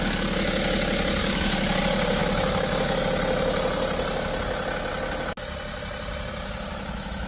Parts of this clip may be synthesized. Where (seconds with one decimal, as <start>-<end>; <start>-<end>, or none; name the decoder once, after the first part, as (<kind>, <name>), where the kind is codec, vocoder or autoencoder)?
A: 1.2-1.8 (autoencoder, DAC-VAE); 2.2-3.0